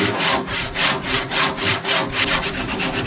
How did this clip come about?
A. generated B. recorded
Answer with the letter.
B